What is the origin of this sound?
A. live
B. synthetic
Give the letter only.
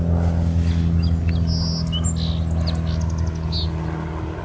A